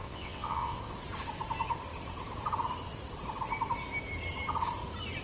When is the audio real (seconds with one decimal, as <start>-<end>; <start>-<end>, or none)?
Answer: 0.8-5.2